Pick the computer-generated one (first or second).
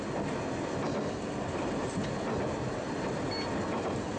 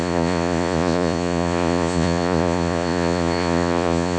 second